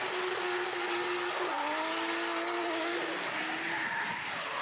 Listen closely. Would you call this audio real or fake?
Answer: real